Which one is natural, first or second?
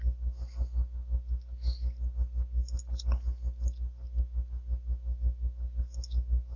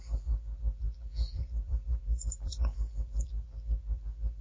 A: first